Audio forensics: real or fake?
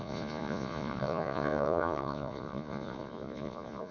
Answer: fake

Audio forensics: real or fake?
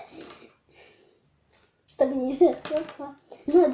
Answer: real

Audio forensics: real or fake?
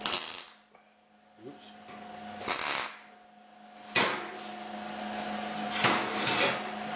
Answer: real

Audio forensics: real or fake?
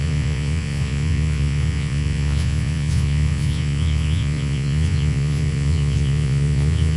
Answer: fake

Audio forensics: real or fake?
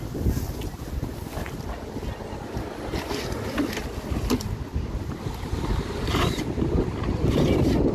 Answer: real